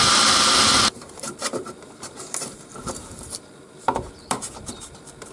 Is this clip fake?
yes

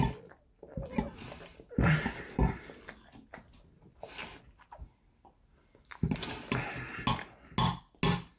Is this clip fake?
no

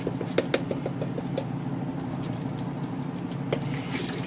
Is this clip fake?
no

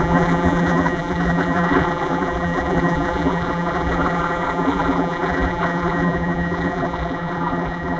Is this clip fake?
yes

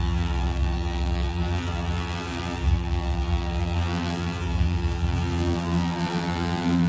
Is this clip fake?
yes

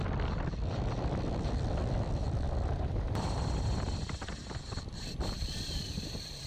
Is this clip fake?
yes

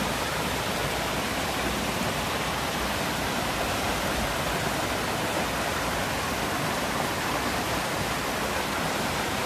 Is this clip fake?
no